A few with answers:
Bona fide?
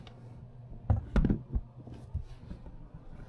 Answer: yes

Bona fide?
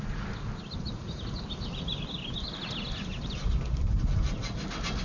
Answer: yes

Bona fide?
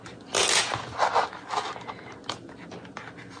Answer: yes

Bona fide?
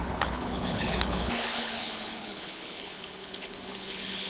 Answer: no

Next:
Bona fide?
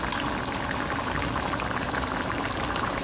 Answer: yes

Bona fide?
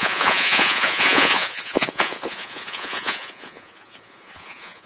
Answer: no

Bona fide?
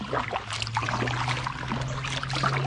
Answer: yes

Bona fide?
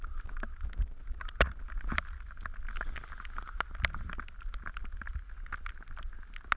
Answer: yes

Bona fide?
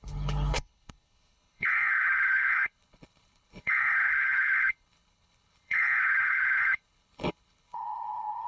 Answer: no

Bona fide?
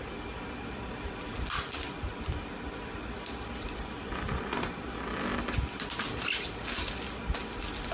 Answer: yes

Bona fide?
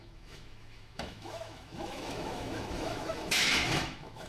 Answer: no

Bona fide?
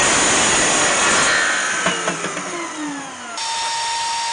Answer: yes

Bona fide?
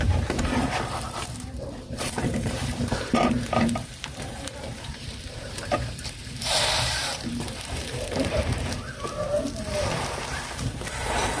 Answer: no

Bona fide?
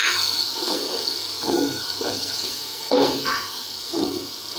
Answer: no